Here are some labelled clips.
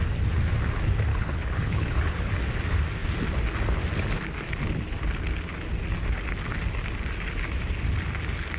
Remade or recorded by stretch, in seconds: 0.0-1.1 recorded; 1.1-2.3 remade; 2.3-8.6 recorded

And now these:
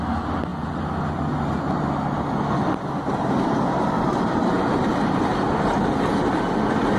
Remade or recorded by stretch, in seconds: 0.0-7.0 recorded

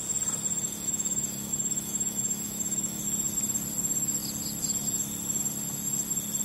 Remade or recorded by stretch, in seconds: 0.0-0.6 recorded; 0.6-3.0 remade; 3.0-6.4 recorded

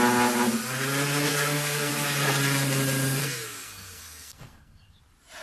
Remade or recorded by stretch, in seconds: 0.0-1.3 recorded; 1.3-1.9 remade; 1.9-3.2 recorded; 3.2-5.0 remade; 5.0-5.4 recorded

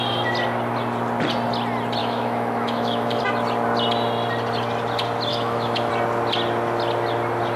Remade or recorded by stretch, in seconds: 0.0-2.0 recorded; 2.0-3.2 remade; 3.2-5.3 recorded; 5.3-5.9 remade; 5.9-7.6 recorded

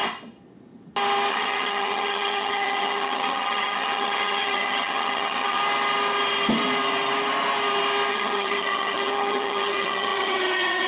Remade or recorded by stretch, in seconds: 0.0-1.3 recorded; 1.3-5.6 remade; 5.6-8.1 recorded; 8.1-10.9 remade